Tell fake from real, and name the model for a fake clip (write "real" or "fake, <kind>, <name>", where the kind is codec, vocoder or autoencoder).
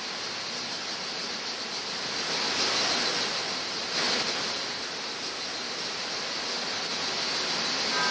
real